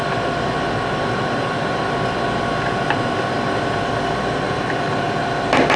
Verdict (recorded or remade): recorded